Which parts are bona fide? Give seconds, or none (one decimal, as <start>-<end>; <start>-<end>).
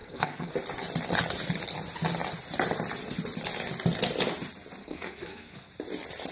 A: 0.5-4.8; 5.7-6.3